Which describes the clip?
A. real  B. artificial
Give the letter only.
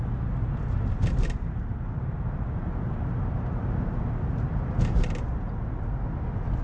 A